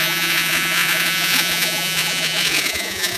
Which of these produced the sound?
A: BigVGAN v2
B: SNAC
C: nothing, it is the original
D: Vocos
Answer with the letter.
D